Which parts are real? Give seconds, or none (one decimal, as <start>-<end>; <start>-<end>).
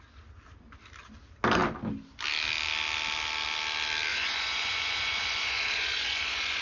0.0-4.1